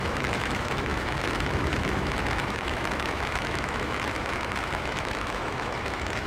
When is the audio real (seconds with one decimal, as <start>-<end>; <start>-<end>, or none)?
none